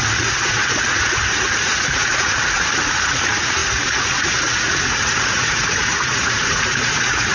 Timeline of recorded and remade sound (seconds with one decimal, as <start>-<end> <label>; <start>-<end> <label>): 0.0-7.3 remade